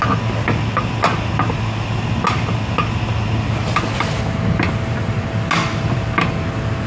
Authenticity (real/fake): real